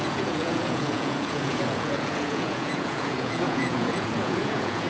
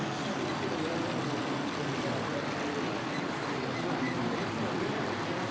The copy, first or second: first